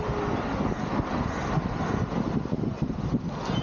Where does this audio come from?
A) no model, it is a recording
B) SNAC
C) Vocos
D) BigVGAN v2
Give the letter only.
A